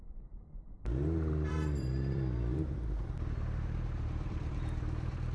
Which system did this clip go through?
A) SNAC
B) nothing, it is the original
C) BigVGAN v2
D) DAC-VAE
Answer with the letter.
C